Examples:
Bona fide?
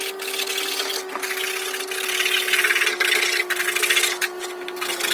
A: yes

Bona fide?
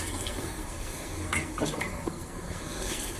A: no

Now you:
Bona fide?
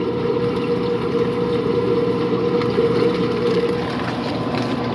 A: yes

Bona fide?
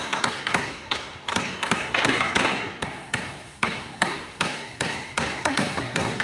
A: no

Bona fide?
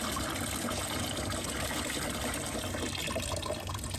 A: yes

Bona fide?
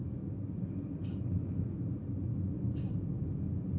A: yes